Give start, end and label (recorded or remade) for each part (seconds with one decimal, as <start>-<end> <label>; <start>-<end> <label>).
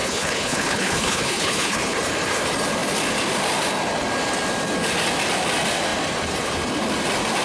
0.0-2.0 remade; 2.0-7.4 recorded